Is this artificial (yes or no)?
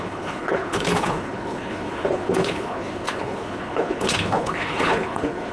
yes